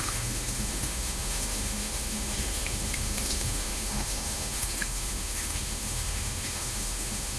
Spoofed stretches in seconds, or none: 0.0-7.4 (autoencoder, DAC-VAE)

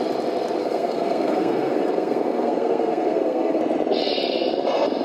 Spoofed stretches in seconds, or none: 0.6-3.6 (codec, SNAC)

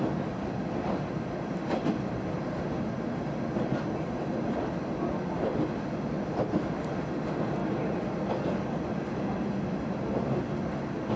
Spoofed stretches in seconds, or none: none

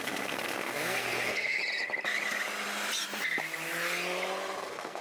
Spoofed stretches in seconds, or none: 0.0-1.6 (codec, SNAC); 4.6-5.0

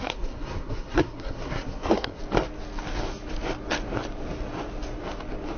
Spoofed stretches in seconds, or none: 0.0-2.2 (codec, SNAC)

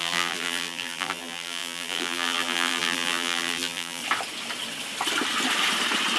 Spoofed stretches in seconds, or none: 0.0-4.0 (vocoder, BigVGAN v2)

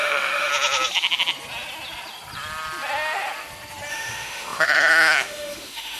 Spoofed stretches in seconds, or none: 0.0-0.5 (autoencoder, DAC-VAE); 3.9-6.0